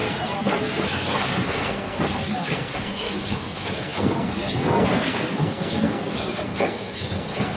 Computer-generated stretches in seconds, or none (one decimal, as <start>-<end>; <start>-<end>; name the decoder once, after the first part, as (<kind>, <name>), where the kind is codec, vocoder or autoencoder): 0.0-7.6 (codec, SNAC)